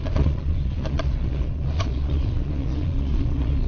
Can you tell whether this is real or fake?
fake